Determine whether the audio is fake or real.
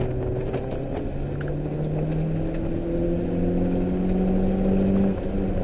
real